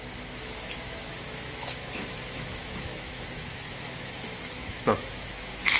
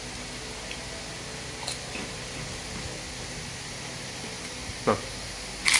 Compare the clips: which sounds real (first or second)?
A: second